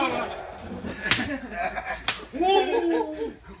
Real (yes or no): yes